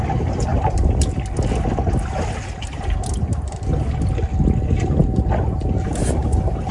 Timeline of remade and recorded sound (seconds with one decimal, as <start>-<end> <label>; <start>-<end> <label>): 0.0-6.7 recorded